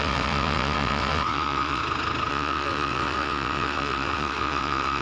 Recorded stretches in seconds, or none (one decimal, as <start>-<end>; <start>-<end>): 1.8-2.3

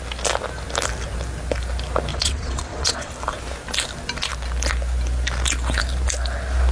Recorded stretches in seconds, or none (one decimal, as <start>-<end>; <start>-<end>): 0.0-2.1; 3.1-6.7

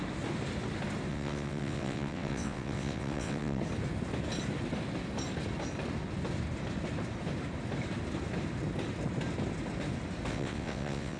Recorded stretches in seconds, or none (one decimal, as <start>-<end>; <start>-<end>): 0.0-1.1; 3.6-10.3

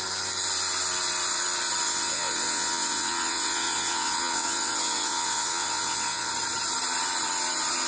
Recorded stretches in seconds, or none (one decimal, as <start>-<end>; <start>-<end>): 0.0-1.8; 6.3-7.9

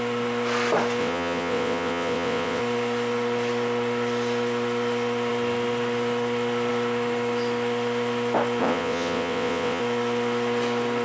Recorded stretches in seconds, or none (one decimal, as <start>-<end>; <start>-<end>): 0.0-1.0; 2.6-8.6; 9.8-11.0

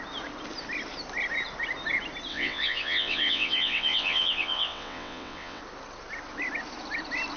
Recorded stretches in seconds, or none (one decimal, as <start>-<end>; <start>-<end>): 0.0-2.3; 5.6-7.4

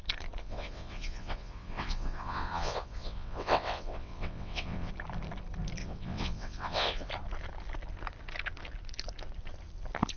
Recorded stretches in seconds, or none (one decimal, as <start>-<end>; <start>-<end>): 0.0-0.4; 4.9-5.8; 7.1-10.2

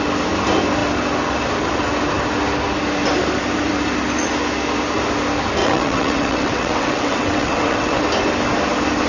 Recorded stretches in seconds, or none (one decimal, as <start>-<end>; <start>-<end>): 0.0-5.6; 8.0-9.1